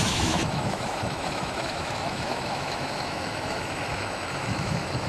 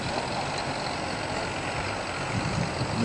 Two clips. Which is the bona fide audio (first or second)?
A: second